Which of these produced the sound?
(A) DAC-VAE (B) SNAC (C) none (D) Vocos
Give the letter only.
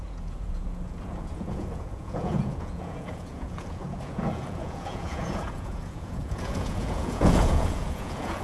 D